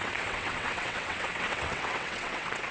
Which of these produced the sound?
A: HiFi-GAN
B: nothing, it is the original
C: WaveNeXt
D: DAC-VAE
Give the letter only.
C